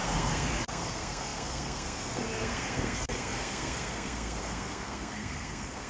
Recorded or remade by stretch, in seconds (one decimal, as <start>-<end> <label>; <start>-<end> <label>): 0.0-5.9 remade